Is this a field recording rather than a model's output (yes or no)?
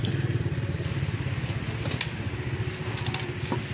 yes